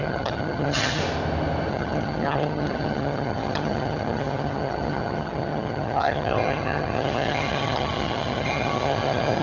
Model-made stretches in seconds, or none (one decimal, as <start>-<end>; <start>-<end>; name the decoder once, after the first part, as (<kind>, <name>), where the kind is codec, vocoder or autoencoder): 0.0-1.0 (vocoder, HiFi-GAN); 1.7-9.4